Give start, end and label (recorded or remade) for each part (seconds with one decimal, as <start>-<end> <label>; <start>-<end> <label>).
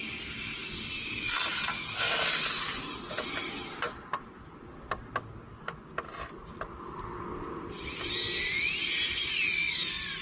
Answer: 0.0-10.2 recorded